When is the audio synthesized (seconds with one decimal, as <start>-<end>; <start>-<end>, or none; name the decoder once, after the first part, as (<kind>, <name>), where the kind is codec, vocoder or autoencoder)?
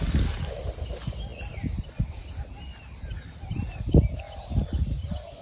none